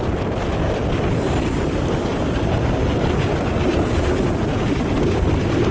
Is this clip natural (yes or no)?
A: yes